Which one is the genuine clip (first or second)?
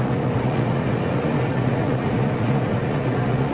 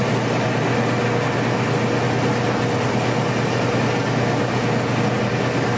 second